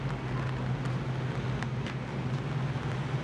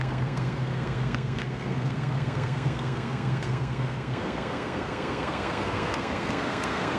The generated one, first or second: second